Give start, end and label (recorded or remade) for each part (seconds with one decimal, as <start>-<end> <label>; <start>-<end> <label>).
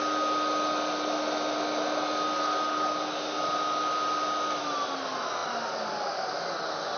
0.0-7.0 recorded